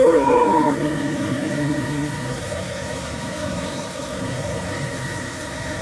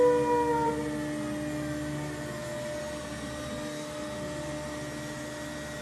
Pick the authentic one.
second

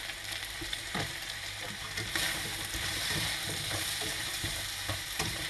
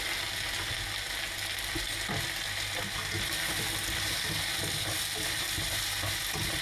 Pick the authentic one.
second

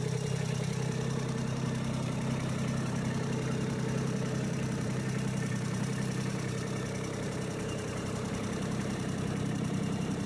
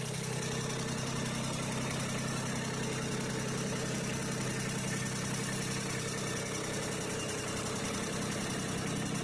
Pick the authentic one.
second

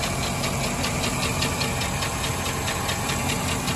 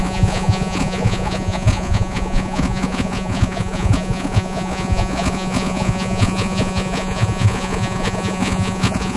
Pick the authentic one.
first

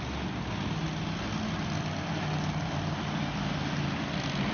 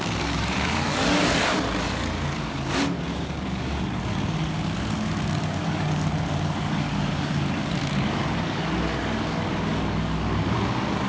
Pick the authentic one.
first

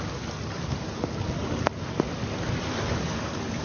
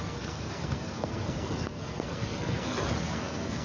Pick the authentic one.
first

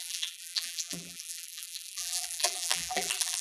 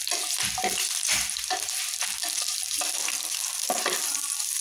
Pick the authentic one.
second